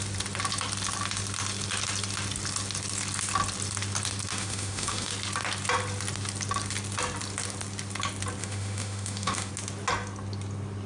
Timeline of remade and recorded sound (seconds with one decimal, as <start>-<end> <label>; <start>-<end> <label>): 0.0-4.3 recorded; 4.3-5.1 remade; 5.1-8.4 recorded; 8.4-9.5 remade; 9.5-10.9 recorded